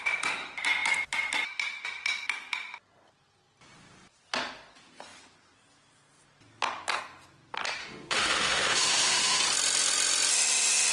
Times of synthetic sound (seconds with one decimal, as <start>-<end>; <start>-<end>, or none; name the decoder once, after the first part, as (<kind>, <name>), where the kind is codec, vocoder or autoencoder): 7.8-9.4 (autoencoder, DAC-VAE)